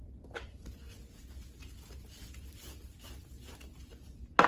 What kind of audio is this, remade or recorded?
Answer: remade